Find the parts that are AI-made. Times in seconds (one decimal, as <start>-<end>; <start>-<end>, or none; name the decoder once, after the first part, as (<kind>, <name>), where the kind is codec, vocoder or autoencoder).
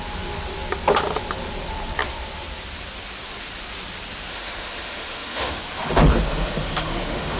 4.3-5.6 (autoencoder, DAC-VAE); 6.3-7.4